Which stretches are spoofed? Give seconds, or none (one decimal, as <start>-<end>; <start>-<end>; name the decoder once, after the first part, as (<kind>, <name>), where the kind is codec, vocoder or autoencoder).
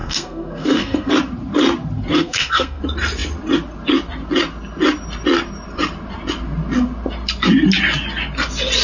0.0-1.1 (codec, SNAC); 2.1-2.8